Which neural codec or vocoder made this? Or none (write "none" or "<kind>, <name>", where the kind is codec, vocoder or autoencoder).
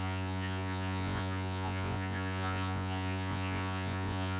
vocoder, Vocos